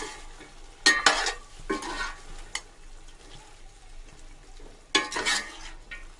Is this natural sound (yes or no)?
yes